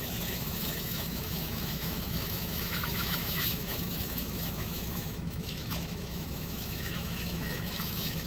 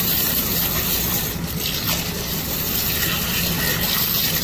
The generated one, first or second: first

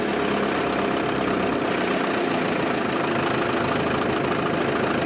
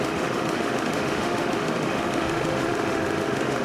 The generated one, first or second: second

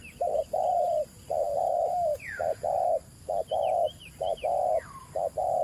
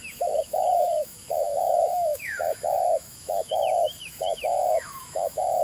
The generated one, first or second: second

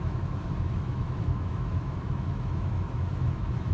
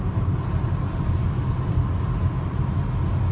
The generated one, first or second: first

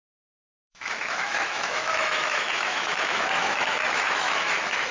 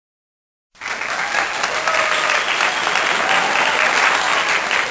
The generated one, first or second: first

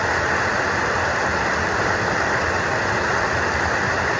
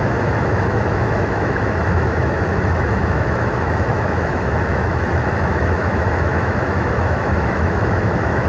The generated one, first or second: second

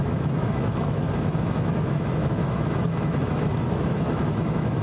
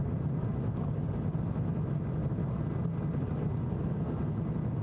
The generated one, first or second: first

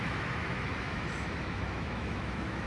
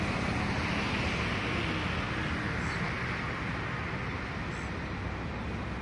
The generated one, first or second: first